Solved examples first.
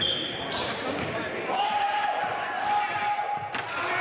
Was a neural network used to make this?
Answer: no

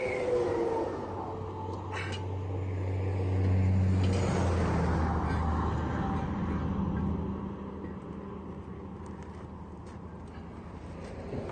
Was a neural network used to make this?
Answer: no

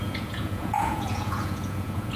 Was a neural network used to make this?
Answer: yes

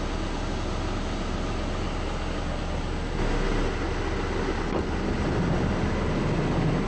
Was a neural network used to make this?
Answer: no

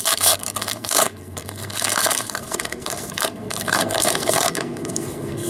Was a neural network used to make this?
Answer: yes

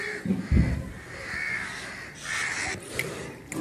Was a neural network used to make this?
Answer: no